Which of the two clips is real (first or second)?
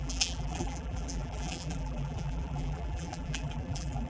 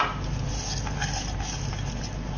second